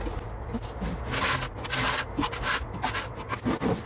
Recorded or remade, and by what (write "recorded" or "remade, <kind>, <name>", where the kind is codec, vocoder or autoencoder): recorded